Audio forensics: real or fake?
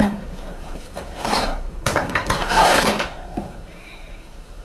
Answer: fake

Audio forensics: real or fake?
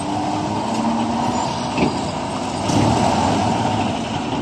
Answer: real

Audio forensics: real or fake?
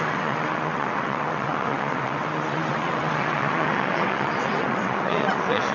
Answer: fake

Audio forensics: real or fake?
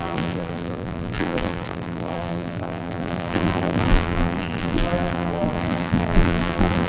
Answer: fake